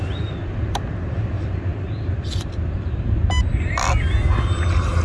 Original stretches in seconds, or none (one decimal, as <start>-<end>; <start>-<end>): 0.0-5.0